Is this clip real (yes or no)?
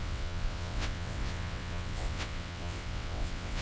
no